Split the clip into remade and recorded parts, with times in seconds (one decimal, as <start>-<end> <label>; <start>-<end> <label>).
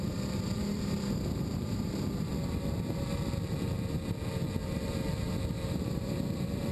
0.0-2.3 remade; 2.3-4.6 recorded; 4.6-6.7 remade